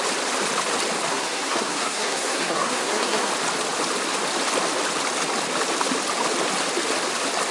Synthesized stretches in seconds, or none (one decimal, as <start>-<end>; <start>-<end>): 1.1-3.3